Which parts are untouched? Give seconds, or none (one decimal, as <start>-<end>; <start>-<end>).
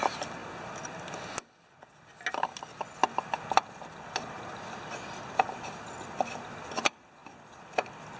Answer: 0.0-8.2